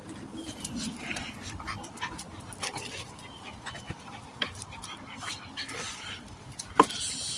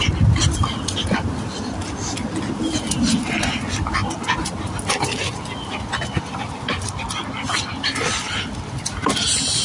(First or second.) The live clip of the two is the second